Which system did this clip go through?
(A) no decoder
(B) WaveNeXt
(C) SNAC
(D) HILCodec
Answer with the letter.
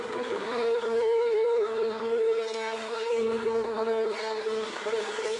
C